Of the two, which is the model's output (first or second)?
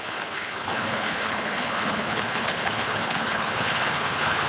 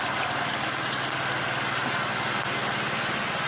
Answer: first